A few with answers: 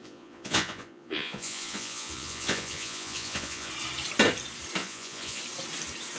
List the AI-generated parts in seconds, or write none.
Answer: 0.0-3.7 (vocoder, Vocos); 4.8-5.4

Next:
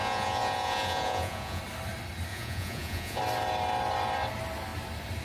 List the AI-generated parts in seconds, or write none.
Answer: 0.0-1.6 (vocoder, Vocos); 2.3-3.2

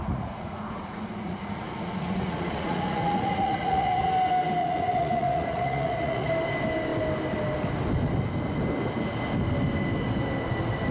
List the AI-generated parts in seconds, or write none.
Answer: 0.0-4.1 (vocoder, Vocos); 4.6-6.3

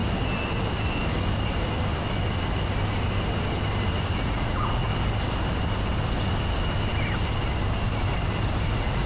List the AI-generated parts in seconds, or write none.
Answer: 4.2-4.9 (vocoder, Vocos); 8.7-9.1

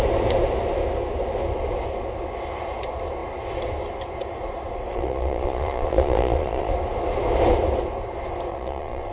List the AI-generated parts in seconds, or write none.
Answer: 4.9-6.7 (vocoder, Vocos); 8.5-9.1

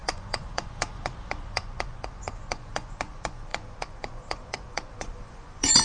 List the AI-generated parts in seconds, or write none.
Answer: 0.0-5.8 (vocoder, Vocos)

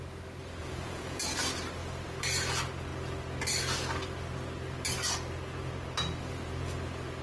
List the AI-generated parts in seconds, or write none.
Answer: 0.6-1.2 (vocoder, Vocos)